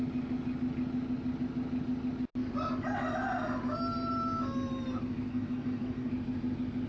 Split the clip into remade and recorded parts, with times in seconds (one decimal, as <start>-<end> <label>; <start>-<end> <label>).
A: 0.0-5.3 recorded; 5.3-6.1 remade; 6.1-6.9 recorded

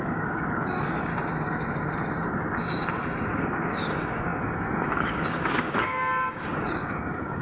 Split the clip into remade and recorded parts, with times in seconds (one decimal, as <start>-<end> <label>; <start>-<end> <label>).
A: 0.0-1.1 remade; 1.1-3.3 recorded; 3.3-7.4 remade

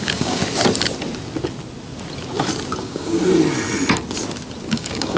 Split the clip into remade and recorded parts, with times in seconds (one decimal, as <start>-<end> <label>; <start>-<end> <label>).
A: 0.0-0.4 remade; 0.4-2.8 recorded; 2.8-3.2 remade; 3.2-4.7 recorded; 4.7-5.2 remade

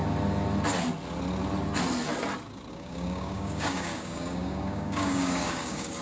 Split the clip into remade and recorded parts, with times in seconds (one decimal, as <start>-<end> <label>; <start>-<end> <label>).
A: 0.0-2.7 recorded; 2.7-6.0 remade